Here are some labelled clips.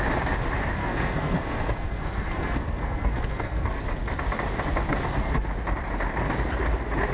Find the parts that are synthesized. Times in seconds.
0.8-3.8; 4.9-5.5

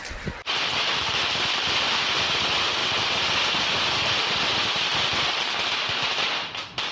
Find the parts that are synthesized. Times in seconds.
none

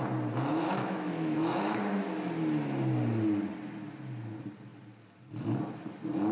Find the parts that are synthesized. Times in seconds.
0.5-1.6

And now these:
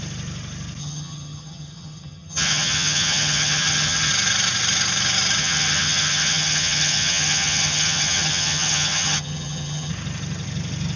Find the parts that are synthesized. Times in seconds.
0.8-4.1; 5.4-9.9

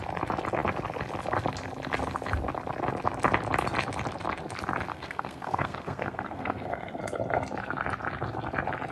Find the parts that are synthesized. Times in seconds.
4.9-7.0

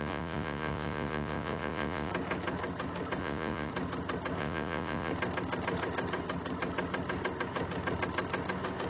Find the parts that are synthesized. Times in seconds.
0.0-2.1; 3.2-3.7; 4.4-5.1

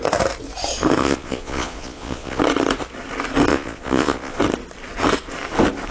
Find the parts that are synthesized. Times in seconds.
1.0-2.4; 3.5-4.4